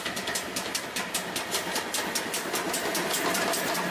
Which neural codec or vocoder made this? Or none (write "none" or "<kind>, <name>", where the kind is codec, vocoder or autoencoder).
none